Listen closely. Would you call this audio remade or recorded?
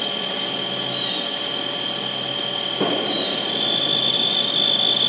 recorded